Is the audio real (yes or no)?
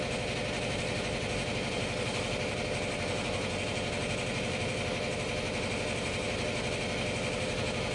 yes